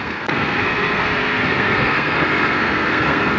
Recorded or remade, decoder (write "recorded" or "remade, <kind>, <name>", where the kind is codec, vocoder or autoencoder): remade, codec, SNAC